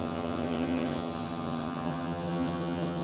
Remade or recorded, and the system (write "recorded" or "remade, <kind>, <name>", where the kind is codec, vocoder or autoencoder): remade, vocoder, HiFi-GAN